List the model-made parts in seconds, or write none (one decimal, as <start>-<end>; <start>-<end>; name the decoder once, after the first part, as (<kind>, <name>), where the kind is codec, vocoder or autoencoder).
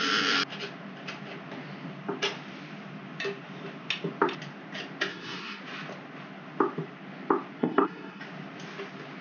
5.1-5.6 (codec, SNAC); 7.6-8.2